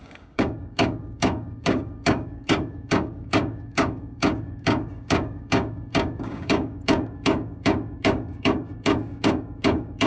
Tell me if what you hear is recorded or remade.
remade